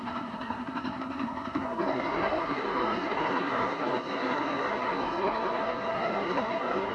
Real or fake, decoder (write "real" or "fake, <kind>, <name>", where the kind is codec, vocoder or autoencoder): fake, codec, SNAC